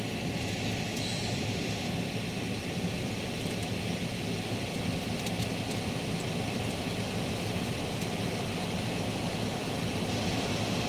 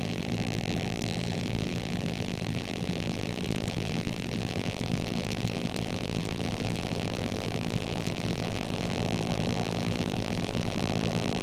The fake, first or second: second